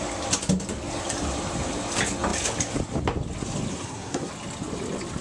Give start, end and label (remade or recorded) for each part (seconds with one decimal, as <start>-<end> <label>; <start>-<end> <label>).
0.0-3.7 recorded; 3.7-4.3 remade; 4.3-5.2 recorded